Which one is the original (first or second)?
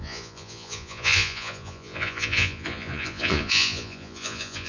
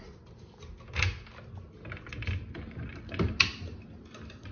second